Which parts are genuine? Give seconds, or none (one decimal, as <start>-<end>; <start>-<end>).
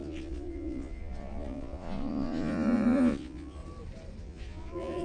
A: 3.6-4.2